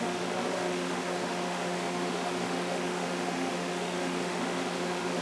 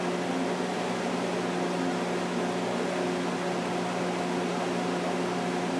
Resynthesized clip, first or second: first